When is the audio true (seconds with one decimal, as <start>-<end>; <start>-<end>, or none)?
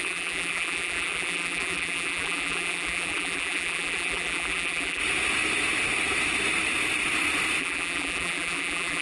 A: 5.0-7.6